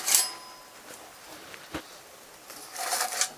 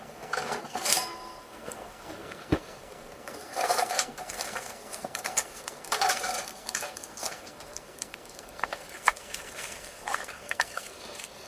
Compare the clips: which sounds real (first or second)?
first